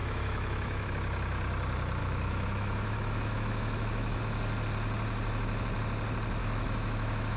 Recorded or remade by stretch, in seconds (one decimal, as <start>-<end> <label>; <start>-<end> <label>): 0.0-0.9 remade; 0.9-2.0 recorded; 2.0-4.2 remade; 4.2-6.4 recorded; 6.4-7.4 remade